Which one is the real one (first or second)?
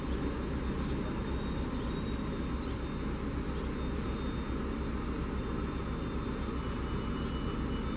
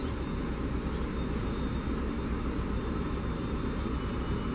first